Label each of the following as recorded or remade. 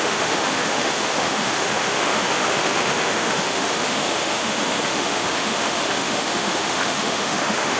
remade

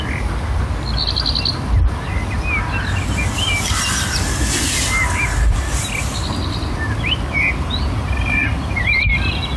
recorded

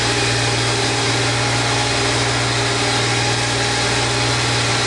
recorded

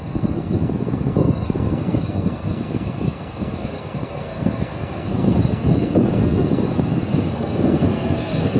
remade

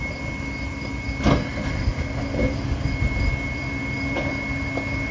recorded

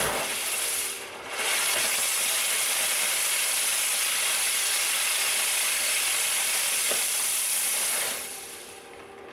recorded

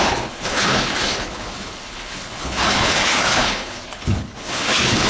remade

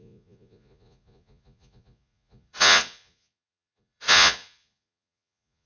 remade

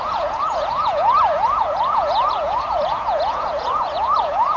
remade